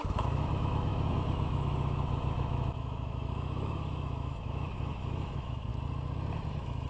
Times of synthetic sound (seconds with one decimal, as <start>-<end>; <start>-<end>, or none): 0.0-5.7; 6.5-6.9